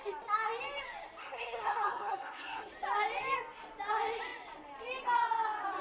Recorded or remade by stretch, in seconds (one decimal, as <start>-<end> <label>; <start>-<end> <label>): 0.0-1.2 recorded; 1.2-2.7 remade; 2.7-5.8 recorded